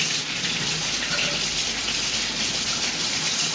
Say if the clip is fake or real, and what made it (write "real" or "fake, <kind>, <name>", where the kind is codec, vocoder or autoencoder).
real